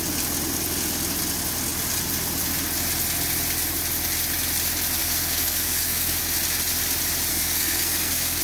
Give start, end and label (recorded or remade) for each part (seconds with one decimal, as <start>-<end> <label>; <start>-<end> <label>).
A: 0.0-5.0 recorded; 5.0-6.2 remade; 6.2-7.3 recorded; 7.3-8.4 remade